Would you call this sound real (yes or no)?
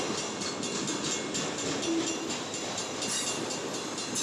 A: yes